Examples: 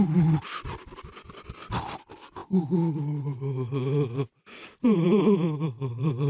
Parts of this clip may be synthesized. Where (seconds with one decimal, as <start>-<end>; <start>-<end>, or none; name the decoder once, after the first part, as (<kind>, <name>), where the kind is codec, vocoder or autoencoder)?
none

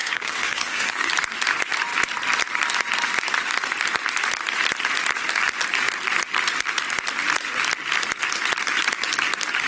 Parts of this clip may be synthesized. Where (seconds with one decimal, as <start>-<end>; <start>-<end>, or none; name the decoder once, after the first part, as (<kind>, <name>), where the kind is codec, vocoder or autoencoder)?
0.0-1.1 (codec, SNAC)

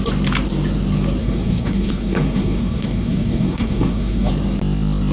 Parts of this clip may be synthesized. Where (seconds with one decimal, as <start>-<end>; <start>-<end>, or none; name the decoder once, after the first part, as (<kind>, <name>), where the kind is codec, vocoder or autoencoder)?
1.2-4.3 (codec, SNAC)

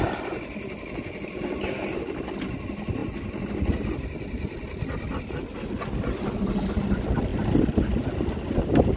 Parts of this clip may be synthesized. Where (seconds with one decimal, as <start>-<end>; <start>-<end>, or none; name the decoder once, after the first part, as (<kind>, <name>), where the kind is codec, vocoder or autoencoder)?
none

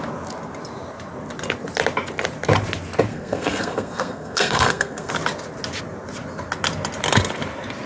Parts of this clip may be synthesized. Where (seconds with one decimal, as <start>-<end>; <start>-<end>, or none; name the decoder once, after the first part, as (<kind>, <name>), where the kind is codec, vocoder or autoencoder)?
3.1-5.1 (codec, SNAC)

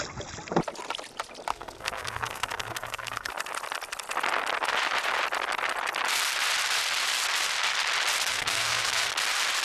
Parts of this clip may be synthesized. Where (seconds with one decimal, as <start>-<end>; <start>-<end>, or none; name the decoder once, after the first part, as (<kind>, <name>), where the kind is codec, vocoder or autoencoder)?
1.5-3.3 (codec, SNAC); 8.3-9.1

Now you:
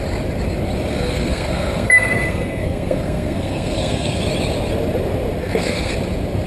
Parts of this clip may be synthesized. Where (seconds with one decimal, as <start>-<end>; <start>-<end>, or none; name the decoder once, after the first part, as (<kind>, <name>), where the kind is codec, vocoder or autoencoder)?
0.9-4.2 (codec, SNAC); 5.4-5.9

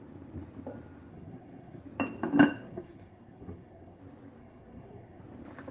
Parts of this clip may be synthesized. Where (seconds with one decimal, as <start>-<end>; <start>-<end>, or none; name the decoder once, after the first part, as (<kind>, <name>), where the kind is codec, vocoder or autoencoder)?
1.1-1.8 (codec, SNAC); 2.5-4.0; 4.4-5.2